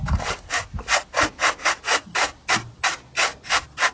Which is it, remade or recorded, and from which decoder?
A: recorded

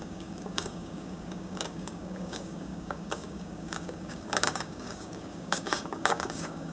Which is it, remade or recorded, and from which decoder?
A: remade, codec, DAC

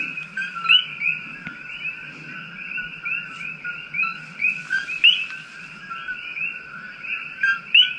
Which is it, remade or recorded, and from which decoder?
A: remade, vocoder, BigVGAN v2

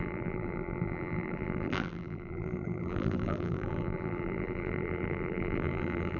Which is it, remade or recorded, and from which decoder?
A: remade, vocoder, BigVGAN v2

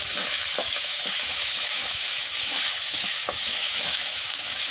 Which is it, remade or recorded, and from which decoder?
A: remade, autoencoder, DAC-VAE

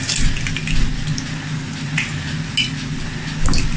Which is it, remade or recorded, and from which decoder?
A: recorded